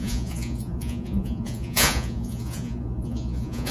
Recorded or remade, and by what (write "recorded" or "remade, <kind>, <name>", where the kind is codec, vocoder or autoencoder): remade, vocoder, Vocos